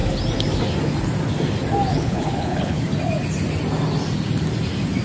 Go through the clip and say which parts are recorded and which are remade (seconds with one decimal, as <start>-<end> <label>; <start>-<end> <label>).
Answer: 0.0-1.9 recorded; 1.9-2.8 remade; 2.8-5.0 recorded